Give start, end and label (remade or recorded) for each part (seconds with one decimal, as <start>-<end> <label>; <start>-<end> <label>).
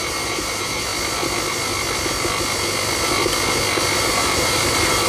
0.0-0.9 remade; 0.9-4.0 recorded; 4.0-5.1 remade